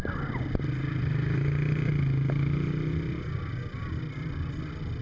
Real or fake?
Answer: real